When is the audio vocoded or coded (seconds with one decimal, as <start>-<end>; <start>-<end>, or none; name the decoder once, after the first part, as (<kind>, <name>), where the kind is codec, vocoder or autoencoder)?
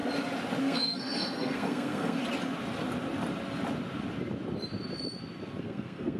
0.6-2.2 (codec, SNAC); 5.6-6.2